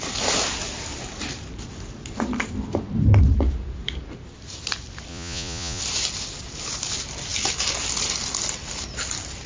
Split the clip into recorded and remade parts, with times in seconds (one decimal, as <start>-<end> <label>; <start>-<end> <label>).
0.0-5.1 recorded; 5.1-5.8 remade; 5.8-9.5 recorded